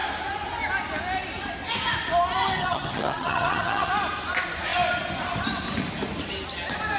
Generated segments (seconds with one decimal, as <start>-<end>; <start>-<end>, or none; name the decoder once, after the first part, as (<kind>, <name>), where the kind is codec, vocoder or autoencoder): 2.6-3.9 (vocoder, HiFi-GAN)